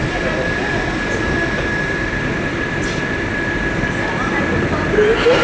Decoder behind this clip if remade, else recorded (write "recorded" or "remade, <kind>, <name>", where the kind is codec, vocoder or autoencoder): recorded